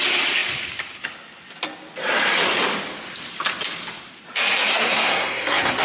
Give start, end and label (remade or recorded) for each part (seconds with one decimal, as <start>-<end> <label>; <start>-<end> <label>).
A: 0.0-4.7 recorded; 4.7-5.8 remade